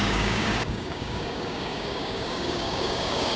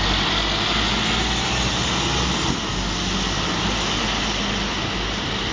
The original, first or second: second